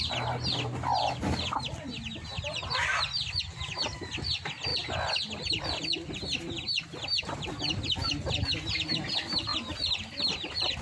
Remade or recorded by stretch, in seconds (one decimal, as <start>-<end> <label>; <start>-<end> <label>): 0.0-10.8 recorded